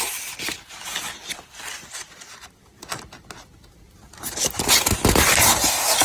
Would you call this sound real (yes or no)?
yes